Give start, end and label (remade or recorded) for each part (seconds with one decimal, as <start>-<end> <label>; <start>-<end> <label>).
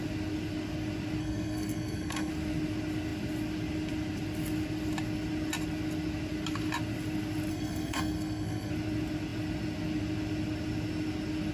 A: 0.0-1.2 recorded; 1.2-2.3 remade; 2.3-7.5 recorded; 7.5-8.7 remade; 8.7-11.5 recorded